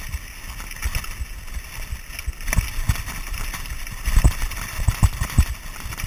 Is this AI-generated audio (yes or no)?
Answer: no